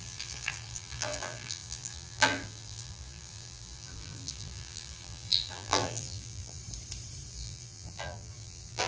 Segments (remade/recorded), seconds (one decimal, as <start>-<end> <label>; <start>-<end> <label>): 0.0-6.6 remade; 6.6-7.3 recorded; 7.3-8.9 remade